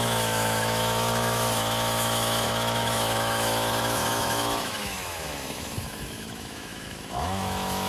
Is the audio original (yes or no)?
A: no